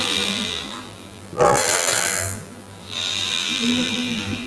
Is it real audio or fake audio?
fake